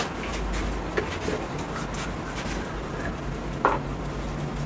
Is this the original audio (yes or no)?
yes